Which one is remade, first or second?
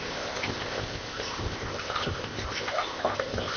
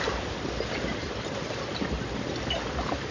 first